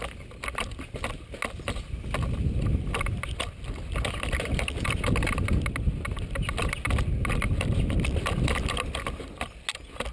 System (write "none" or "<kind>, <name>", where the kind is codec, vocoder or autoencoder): none